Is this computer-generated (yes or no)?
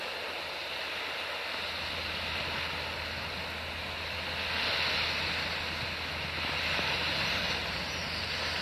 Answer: no